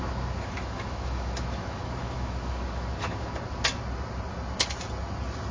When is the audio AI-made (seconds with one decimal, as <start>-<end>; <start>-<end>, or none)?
0.0-3.3